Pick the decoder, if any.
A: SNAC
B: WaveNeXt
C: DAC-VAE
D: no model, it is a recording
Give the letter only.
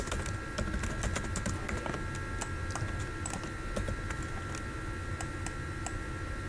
D